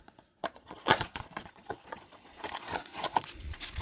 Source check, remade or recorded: remade